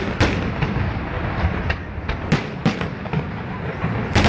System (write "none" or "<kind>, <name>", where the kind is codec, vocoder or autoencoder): none